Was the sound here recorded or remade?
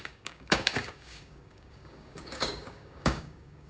remade